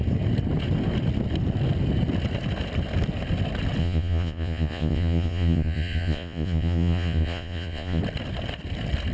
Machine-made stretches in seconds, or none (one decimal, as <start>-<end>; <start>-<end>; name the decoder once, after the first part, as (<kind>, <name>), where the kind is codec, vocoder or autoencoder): 3.8-8.0 (vocoder, Vocos)